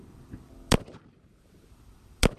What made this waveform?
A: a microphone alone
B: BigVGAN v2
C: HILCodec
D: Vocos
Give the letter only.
B